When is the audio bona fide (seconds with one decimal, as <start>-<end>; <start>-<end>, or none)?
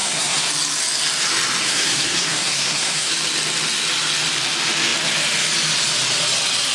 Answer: 0.5-1.6; 3.1-6.7